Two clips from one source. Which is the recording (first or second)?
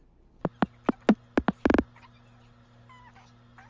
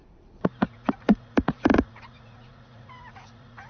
first